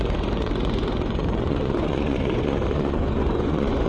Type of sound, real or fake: fake